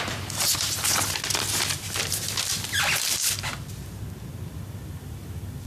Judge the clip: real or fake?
real